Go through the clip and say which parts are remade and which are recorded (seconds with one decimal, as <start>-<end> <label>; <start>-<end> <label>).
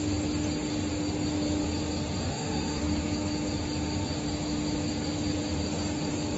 0.0-2.2 recorded; 2.2-2.8 remade; 2.8-6.4 recorded